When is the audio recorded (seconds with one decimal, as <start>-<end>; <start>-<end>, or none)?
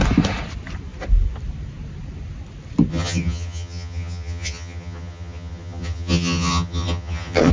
0.0-2.9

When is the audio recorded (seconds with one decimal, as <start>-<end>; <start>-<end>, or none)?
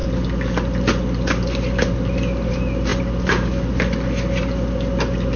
0.0-5.4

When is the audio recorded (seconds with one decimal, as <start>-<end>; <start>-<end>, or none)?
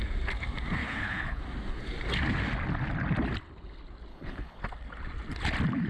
0.0-0.8; 1.4-4.1; 4.6-5.9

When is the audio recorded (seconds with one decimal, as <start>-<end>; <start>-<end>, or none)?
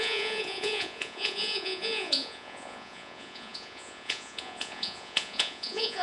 none